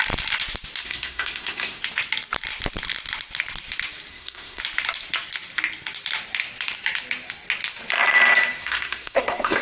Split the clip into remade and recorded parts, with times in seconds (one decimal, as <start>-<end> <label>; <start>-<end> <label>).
0.0-0.8 recorded; 0.8-1.8 remade; 1.8-4.1 recorded; 4.1-4.6 remade; 4.6-8.6 recorded; 8.6-9.6 remade